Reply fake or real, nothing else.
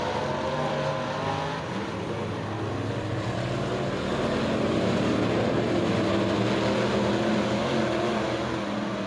real